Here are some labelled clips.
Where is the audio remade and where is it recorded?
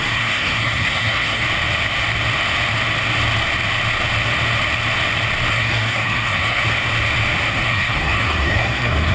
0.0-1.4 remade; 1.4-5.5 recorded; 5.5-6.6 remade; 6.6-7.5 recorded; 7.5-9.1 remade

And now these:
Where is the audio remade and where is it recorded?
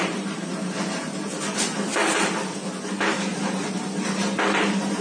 0.0-0.5 remade; 0.5-1.6 recorded; 1.6-2.0 remade; 2.0-3.1 recorded; 3.1-5.0 remade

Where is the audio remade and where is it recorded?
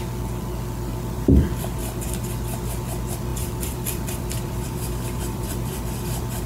0.0-0.9 recorded; 0.9-1.8 remade; 1.8-3.3 recorded; 3.3-6.5 remade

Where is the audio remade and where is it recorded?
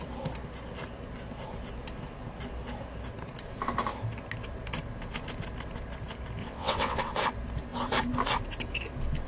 0.0-6.4 recorded; 6.4-7.0 remade; 7.0-9.3 recorded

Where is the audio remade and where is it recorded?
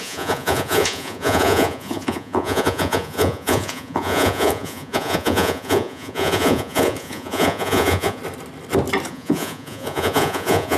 0.0-8.2 remade; 8.2-9.1 recorded; 9.1-10.8 remade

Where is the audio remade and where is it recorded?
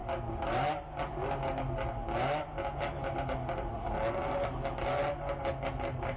0.0-6.2 recorded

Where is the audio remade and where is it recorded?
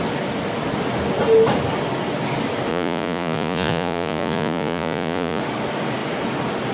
0.0-2.7 recorded; 2.7-5.4 remade; 5.4-6.7 recorded